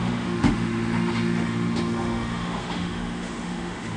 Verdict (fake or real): fake